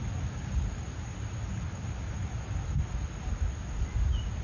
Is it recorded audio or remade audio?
recorded